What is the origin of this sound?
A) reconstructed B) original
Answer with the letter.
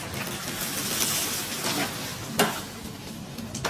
B